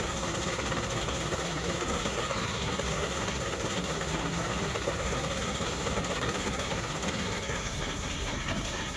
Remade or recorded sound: remade